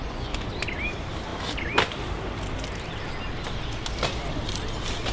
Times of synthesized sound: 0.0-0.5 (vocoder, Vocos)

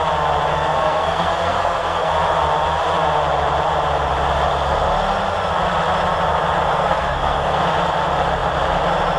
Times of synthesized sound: 0.5-2.1 (codec, SNAC); 6.7-7.6

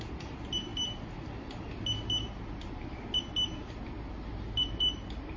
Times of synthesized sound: none

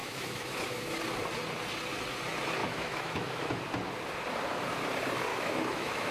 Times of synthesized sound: 0.0-1.0 (autoencoder, DAC-VAE); 2.6-3.6; 5.3-6.1

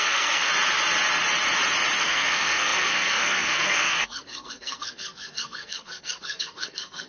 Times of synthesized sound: 0.0-0.5 (codec, SNAC); 2.0-7.1

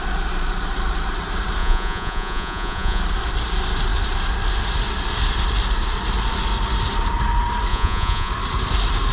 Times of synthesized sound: 1.6-3.0 (vocoder, Vocos); 7.7-8.3